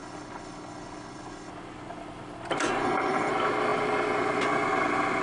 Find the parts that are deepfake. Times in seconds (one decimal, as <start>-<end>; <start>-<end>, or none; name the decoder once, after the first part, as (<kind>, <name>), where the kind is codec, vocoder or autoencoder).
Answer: 0.0-1.5 (codec, HILCodec); 2.8-3.3